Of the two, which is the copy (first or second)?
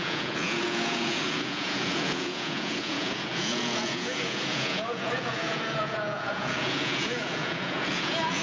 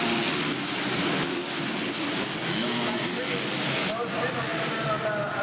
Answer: first